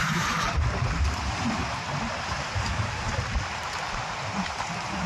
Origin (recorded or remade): remade